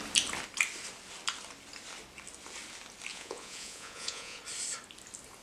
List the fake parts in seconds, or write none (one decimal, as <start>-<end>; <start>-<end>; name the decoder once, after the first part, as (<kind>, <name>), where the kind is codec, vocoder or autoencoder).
3.1-4.4 (vocoder, Vocos)